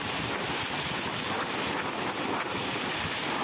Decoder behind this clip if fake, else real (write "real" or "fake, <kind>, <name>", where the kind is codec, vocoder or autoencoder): real